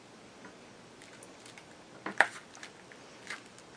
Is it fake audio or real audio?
real